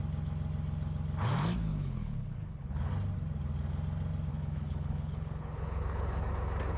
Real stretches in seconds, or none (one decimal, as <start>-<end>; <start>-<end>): 0.0-1.7; 2.9-4.3; 6.3-6.8